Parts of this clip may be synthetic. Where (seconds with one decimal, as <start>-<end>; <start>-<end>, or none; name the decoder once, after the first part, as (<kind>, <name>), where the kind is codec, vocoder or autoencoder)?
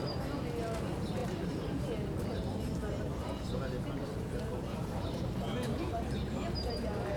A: 4.0-5.2 (vocoder, BigVGAN v2)